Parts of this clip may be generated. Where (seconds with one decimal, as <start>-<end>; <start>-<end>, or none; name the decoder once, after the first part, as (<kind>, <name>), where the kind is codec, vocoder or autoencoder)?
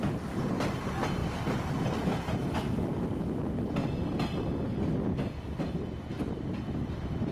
none